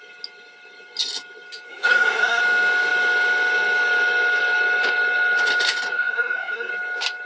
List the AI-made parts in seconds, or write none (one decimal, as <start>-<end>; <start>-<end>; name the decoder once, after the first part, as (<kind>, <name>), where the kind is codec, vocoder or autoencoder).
1.7-2.4 (codec, SNAC); 5.9-6.7